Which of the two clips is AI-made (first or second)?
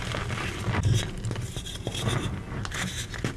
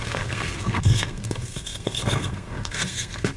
second